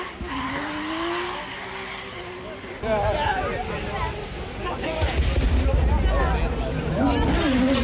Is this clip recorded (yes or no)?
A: yes